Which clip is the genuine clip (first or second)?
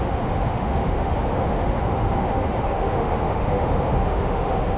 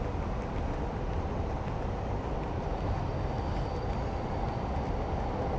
second